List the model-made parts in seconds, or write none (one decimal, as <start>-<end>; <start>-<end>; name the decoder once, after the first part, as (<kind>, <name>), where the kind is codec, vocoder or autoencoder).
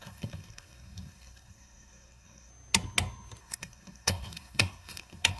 0.0-2.5 (codec, SNAC); 3.4-5.4